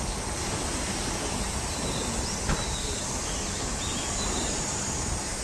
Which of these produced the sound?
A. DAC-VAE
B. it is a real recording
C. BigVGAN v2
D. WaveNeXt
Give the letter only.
B